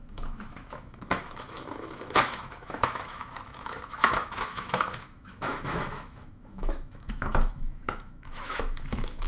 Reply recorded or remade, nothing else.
remade